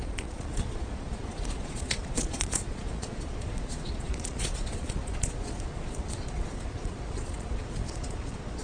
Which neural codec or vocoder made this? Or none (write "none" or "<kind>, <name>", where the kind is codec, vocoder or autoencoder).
vocoder, Vocos